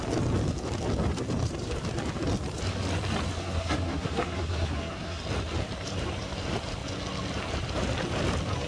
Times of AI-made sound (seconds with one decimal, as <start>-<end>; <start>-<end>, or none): 3.4-5.2

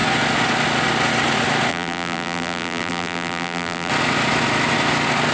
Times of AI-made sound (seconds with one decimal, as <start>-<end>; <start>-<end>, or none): 1.7-3.9

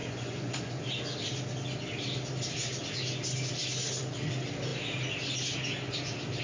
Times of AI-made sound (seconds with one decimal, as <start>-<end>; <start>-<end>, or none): 0.0-0.8

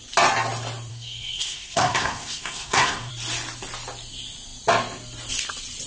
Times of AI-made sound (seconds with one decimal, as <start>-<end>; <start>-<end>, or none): 0.9-3.1

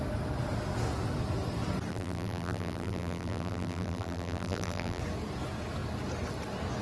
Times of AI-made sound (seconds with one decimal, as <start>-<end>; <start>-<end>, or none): 1.9-5.0

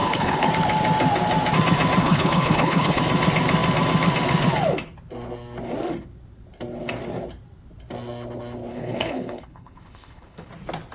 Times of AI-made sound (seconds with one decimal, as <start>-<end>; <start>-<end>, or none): 0.0-0.5; 2.0-3.0; 8.7-10.5

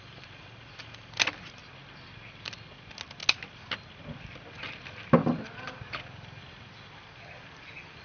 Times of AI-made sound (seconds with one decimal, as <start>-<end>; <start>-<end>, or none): none

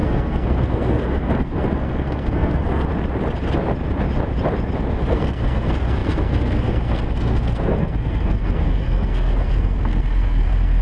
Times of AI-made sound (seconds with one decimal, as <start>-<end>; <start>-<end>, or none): 0.0-2.9; 5.1-10.8